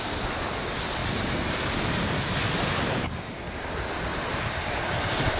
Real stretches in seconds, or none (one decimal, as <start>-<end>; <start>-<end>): 0.0-1.0; 3.4-4.1

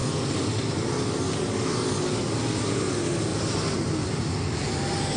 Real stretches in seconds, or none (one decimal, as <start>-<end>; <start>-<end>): 0.0-3.3; 4.2-5.2

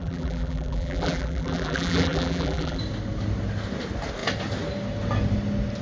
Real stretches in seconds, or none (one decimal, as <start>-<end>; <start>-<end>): 2.8-5.8